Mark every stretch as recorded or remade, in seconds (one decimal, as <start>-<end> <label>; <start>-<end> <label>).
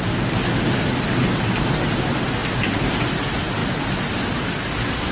0.0-5.1 recorded